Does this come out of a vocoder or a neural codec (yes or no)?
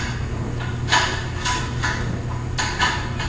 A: no